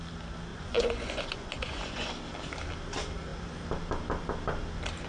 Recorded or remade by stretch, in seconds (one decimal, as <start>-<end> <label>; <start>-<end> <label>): 0.0-0.5 recorded; 0.5-2.1 remade; 2.1-5.1 recorded